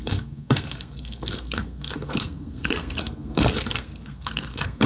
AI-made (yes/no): yes